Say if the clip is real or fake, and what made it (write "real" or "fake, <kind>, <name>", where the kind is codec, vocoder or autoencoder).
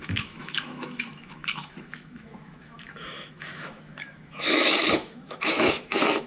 fake, autoencoder, DAC-VAE